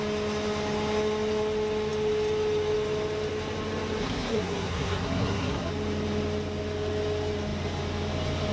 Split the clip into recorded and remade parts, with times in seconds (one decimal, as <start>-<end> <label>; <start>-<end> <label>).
0.0-4.0 recorded; 4.0-5.7 remade; 5.7-8.5 recorded